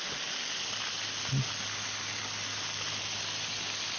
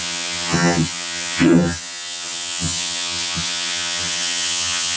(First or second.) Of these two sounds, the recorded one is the first